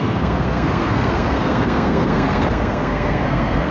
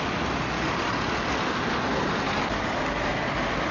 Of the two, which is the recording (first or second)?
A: second